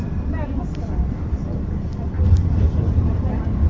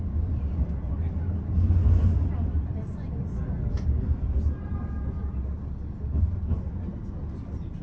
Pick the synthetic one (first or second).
first